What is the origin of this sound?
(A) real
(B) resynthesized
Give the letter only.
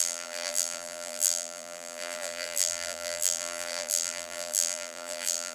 B